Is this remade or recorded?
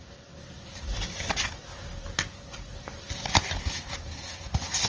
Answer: recorded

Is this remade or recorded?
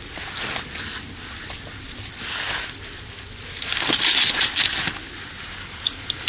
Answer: recorded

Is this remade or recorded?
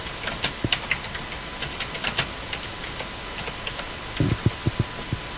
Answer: recorded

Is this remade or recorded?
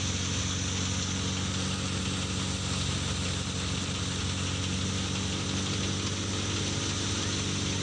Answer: recorded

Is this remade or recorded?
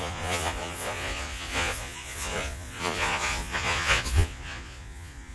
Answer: remade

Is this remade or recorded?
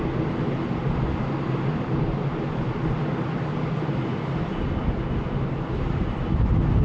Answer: recorded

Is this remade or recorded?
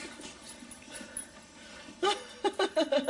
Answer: recorded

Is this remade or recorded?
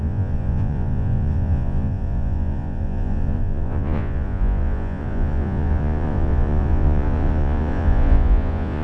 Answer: remade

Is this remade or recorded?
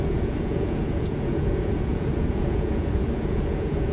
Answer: remade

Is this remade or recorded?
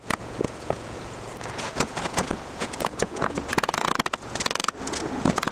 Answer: remade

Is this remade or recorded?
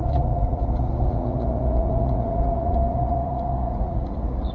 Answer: remade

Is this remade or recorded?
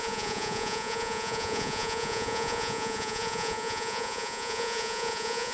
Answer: remade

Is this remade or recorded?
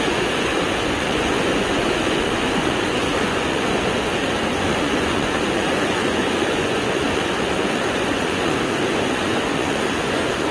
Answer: remade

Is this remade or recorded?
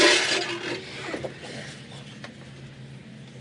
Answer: recorded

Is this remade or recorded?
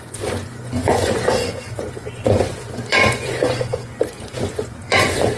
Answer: remade